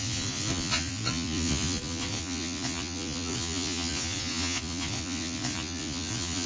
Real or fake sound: fake